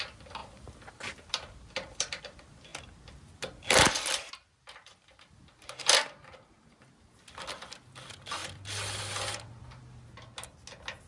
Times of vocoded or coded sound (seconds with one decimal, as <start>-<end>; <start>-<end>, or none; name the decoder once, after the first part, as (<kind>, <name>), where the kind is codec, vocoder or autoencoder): 0.4-2.2 (vocoder, BigVGAN v2)

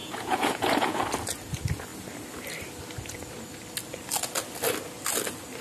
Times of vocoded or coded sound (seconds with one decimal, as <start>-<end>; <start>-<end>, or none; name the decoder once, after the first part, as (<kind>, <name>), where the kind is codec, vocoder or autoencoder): 0.0-1.0 (vocoder, Vocos)

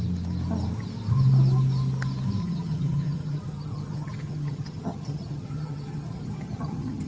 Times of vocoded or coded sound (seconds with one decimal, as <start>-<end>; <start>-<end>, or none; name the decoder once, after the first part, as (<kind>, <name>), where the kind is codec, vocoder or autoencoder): 2.4-7.1 (vocoder, HiFi-GAN)

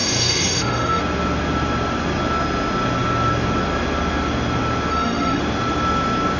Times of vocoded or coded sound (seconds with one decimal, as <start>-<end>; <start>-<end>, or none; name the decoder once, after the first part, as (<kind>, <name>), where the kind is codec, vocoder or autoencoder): 0.0-1.0 (autoencoder, DAC-VAE); 4.9-5.4

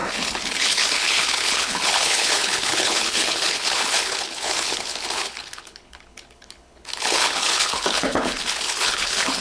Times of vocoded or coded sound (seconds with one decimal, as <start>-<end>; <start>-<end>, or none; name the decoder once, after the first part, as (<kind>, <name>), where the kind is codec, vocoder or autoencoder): 0.0-9.4 (codec, HILCodec)

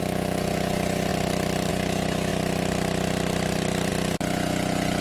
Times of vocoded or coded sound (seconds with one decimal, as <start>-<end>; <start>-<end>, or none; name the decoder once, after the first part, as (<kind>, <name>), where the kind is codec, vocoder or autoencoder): 0.0-1.1 (vocoder, Vocos); 1.7-2.3; 3.9-5.0

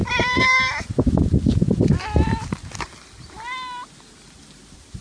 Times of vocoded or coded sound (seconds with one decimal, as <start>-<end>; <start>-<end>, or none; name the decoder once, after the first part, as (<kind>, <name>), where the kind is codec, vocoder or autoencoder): none